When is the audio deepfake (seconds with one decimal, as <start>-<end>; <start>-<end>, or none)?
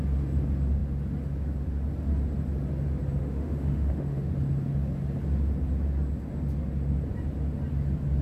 3.2-4.3